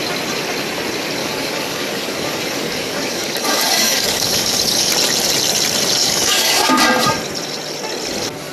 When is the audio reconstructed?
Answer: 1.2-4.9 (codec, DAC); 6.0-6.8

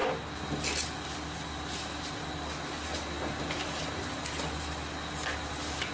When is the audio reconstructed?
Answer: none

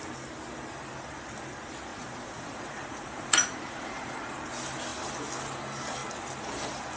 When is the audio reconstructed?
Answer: 1.9-4.4 (vocoder, Vocos)